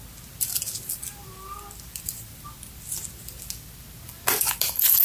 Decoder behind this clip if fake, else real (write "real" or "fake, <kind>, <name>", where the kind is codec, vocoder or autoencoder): real